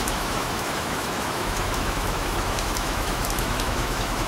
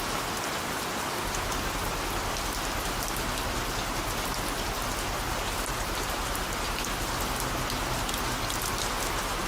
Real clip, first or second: second